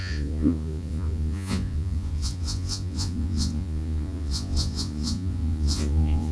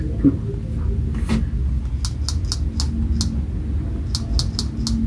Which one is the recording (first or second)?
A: second